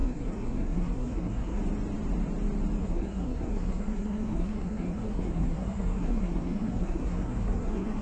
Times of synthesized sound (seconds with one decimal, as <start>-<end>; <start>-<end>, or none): 0.0-1.6; 2.8-8.0